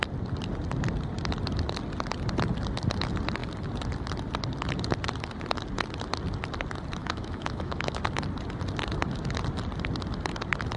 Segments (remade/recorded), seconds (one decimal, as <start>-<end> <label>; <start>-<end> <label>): 0.0-7.0 recorded; 7.0-8.0 remade; 8.0-10.8 recorded